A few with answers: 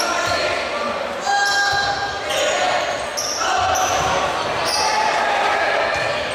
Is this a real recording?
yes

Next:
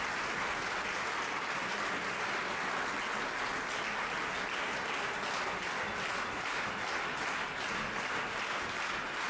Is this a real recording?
yes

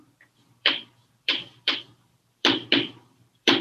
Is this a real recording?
no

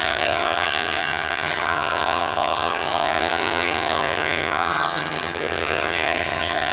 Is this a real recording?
no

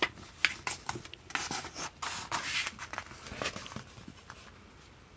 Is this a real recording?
yes